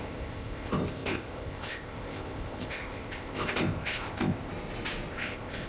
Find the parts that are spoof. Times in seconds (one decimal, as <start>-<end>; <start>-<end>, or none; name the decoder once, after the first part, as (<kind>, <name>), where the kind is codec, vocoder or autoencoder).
0.0-4.5 (codec, ZipCodec); 5.1-5.7